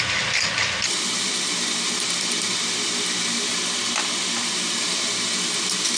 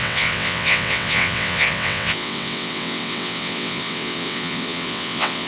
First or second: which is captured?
first